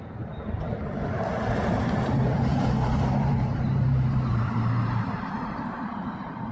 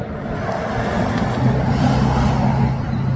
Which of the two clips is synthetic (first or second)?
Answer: first